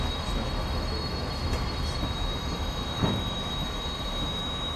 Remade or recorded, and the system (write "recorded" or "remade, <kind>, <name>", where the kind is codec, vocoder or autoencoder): remade, autoencoder, DAC-VAE